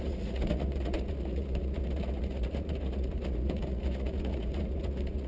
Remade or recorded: remade